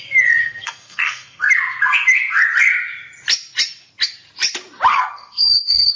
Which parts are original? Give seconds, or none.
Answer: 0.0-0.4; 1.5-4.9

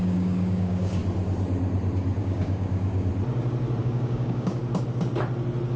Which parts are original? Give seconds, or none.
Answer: 1.0-2.2; 3.1-3.8; 4.6-5.8

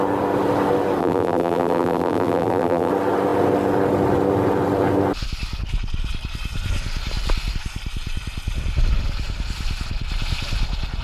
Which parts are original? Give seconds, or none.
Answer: 0.0-1.0; 2.9-11.0

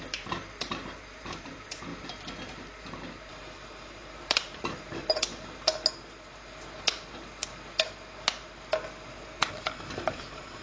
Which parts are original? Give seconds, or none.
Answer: 1.9-2.5; 5.3-9.9

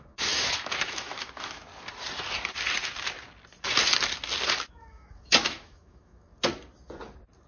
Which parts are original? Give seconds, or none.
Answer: 1.7-4.7; 6.3-7.5

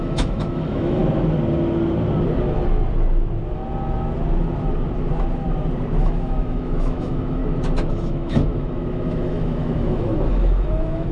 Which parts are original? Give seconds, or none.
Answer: 1.0-6.0; 7.4-7.9

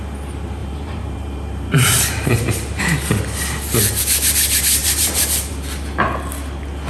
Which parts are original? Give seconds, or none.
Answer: 0.0-0.6; 2.8-4.8; 5.5-6.9

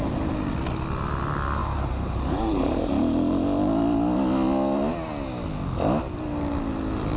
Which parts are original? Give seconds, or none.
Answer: 0.0-1.6; 2.9-7.2